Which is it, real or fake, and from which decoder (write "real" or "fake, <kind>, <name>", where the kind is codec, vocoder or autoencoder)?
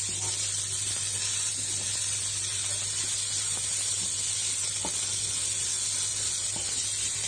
real